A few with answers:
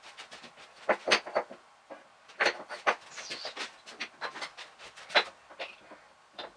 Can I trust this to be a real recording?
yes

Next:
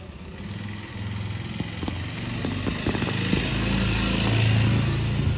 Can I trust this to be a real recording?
yes